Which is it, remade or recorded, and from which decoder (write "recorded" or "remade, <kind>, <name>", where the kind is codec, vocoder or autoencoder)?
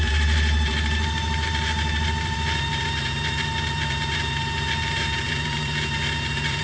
remade, vocoder, BigVGAN v2